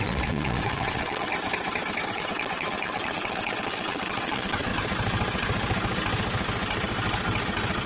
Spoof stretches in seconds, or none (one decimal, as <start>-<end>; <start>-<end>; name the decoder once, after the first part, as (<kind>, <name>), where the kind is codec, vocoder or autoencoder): 0.0-1.3 (vocoder, WaveNeXt); 2.1-4.7